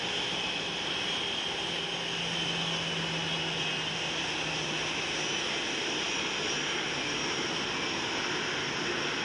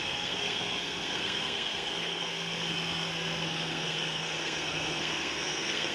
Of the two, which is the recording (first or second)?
first